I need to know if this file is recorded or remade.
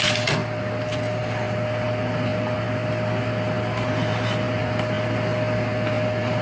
recorded